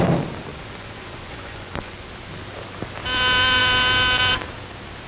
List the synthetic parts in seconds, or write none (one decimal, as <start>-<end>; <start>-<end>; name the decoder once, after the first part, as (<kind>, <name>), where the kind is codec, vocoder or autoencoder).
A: 0.5-2.1 (vocoder, Vocos)

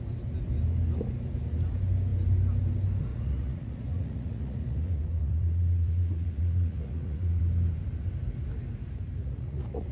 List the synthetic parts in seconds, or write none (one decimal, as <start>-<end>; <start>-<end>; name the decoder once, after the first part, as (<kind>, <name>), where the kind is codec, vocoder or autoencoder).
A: 3.1-7.4 (vocoder, Vocos); 9.2-9.9

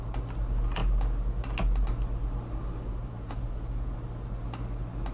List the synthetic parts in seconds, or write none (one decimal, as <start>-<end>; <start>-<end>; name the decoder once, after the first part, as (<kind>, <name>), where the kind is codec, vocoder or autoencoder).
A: 2.9-3.9 (vocoder, Vocos)

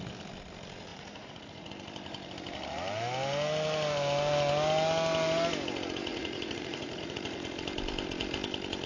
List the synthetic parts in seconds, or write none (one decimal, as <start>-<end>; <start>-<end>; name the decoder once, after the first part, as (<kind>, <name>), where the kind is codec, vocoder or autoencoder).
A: 0.9-1.7 (vocoder, Vocos); 6.0-7.4

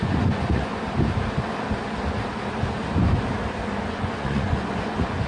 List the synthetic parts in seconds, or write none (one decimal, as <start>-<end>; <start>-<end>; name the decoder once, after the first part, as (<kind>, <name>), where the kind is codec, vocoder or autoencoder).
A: 0.0-0.7 (vocoder, Vocos); 3.9-5.3